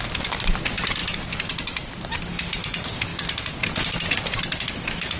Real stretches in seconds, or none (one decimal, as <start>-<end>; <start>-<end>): 0.0-5.2